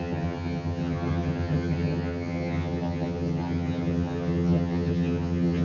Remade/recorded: remade